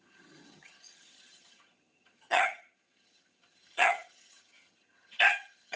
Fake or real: fake